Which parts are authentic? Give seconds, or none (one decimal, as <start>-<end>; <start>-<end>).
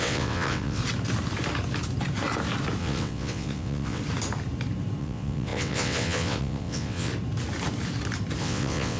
0.8-2.8; 4.0-5.0; 7.1-8.4